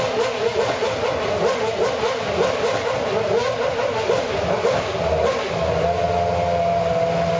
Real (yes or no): yes